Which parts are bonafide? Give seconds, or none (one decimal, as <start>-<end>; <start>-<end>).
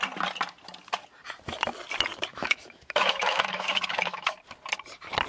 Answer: 0.0-2.3; 4.3-5.3